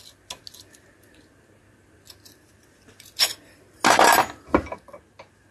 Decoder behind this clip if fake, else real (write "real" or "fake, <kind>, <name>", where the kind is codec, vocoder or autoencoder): real